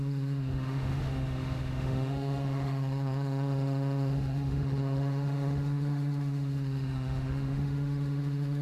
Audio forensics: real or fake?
fake